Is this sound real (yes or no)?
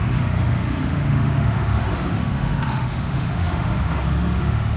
no